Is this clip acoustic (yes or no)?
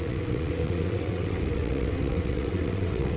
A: no